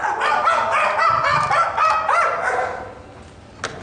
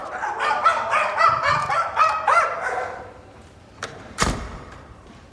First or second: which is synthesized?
second